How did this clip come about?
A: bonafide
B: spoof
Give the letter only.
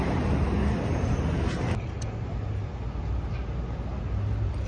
A